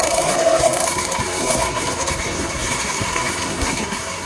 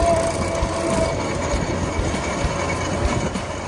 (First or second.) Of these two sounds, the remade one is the first